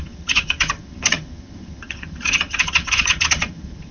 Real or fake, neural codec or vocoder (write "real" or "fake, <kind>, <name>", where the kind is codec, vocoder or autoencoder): fake, vocoder, HiFi-GAN